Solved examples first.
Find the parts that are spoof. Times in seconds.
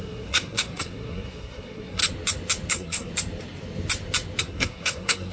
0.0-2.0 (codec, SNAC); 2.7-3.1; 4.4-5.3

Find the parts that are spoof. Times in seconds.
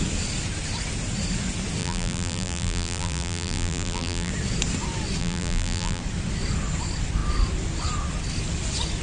1.8-4.3 (vocoder, BigVGAN v2); 5.2-6.0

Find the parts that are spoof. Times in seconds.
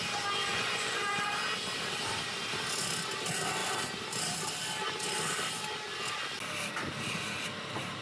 0.5-1.3 (vocoder, Vocos)